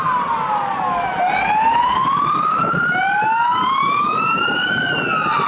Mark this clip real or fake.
real